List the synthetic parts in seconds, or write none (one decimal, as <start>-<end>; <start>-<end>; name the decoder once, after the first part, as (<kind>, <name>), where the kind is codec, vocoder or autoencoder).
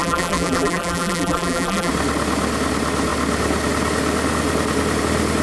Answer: 0.0-1.9 (vocoder, BigVGAN v2)